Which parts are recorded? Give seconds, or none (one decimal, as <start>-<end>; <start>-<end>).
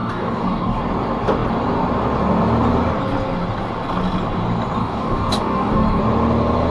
0.8-4.8; 6.0-6.7